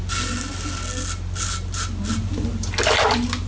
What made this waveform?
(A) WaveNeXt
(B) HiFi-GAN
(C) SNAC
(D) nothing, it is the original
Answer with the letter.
D